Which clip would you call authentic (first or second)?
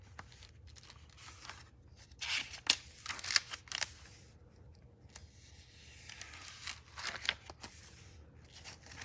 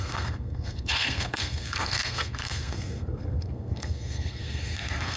first